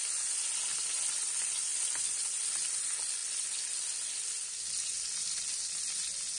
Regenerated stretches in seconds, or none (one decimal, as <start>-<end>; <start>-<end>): none